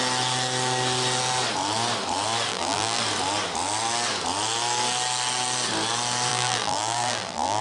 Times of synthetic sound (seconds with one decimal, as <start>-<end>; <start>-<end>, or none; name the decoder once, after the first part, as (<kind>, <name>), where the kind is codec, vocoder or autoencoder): 2.5-3.0 (vocoder, BigVGAN v2); 6.3-7.6